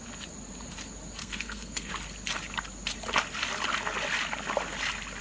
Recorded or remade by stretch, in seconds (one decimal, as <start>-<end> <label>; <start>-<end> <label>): 0.0-1.2 recorded; 1.2-1.9 remade; 1.9-5.2 recorded